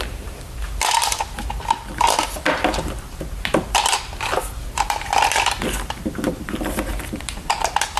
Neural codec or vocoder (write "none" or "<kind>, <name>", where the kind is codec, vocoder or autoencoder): vocoder, BigVGAN v2